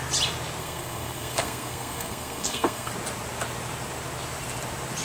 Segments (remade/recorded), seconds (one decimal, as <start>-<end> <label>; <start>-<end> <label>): 0.0-0.6 recorded; 0.6-2.9 remade; 2.9-5.0 recorded